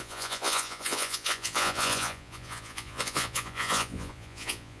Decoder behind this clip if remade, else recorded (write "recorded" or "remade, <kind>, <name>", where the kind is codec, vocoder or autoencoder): remade, vocoder, Vocos